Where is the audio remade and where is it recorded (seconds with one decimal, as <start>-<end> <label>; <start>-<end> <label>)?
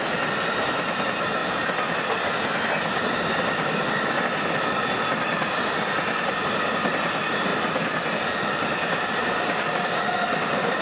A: 0.0-10.8 recorded